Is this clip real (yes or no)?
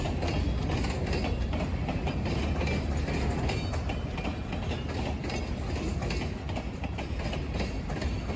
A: yes